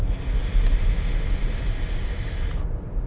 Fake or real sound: real